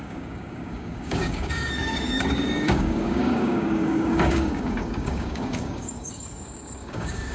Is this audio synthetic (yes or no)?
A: yes